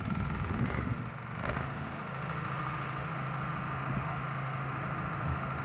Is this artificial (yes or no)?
yes